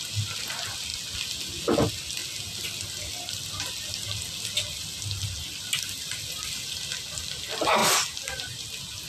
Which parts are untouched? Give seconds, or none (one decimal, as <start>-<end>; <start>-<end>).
0.0-9.1